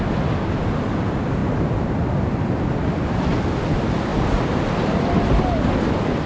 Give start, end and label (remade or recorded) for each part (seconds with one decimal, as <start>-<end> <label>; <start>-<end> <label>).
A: 0.0-1.4 recorded; 1.4-2.1 remade; 2.1-4.1 recorded; 4.1-5.0 remade; 5.0-6.3 recorded